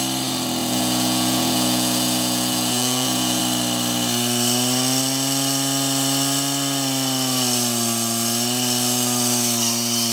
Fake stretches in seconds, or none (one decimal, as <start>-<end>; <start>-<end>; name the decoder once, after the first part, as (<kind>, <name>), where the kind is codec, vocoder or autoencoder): 0.6-3.4 (vocoder, Vocos)